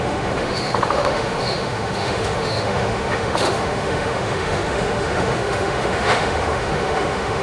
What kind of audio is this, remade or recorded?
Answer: remade